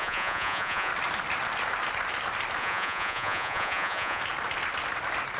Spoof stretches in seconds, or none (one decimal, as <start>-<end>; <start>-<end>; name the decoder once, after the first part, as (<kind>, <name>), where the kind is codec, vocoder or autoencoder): 0.0-0.9 (vocoder, Vocos); 2.6-4.2